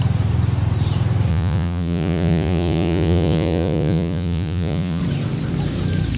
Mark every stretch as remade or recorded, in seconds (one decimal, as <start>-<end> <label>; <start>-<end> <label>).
0.0-1.3 recorded; 1.3-5.0 remade; 5.0-6.2 recorded